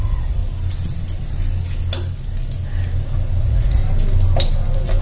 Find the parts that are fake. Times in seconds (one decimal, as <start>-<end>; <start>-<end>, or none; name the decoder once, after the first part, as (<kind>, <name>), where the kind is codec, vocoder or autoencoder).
0.0-0.4 (vocoder, Vocos); 3.4-3.8